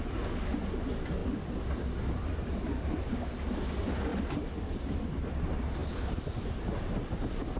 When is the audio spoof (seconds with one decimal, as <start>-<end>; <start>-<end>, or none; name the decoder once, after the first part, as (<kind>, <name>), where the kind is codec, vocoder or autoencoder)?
4.1-5.3 (vocoder, BigVGAN v2); 5.8-7.0